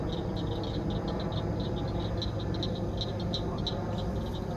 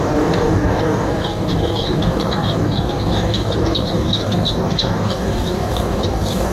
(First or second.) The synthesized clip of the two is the second